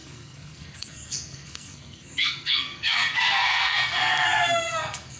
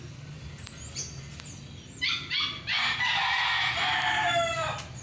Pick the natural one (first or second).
second